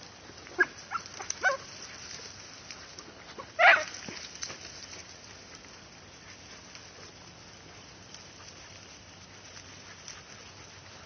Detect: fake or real real